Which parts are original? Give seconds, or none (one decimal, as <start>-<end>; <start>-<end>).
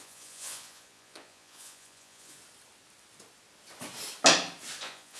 2.4-4.8